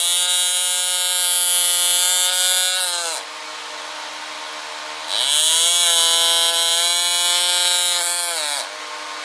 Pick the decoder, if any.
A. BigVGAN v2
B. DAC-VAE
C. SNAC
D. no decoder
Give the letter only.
D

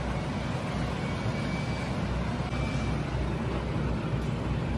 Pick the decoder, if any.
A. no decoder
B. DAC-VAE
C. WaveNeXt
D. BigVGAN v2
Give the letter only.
A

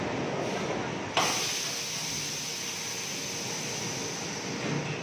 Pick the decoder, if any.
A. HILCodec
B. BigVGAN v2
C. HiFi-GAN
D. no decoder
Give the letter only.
D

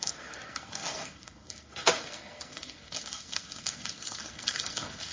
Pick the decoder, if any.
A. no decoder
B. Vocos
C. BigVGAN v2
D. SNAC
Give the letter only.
D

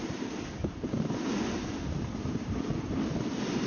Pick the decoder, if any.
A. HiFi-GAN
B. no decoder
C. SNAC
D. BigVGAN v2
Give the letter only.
D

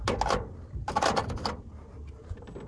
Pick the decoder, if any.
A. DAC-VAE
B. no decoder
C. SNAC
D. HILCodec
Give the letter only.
B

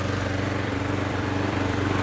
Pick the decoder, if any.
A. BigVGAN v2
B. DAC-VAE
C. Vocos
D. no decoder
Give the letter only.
A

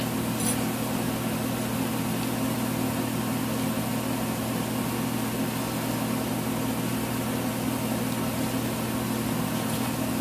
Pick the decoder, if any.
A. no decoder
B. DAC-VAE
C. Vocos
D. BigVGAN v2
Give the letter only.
A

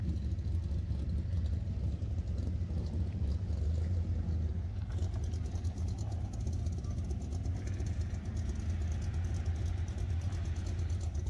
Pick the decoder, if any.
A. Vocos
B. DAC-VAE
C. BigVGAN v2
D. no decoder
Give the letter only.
D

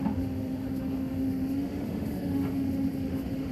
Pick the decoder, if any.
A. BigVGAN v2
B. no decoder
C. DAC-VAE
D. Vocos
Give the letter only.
C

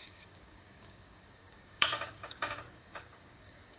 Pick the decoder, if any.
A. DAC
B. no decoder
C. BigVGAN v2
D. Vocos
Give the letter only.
A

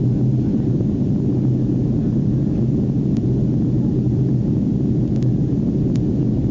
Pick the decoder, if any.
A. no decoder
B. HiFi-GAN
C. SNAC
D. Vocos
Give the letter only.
A